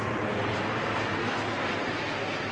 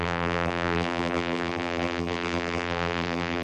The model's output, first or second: second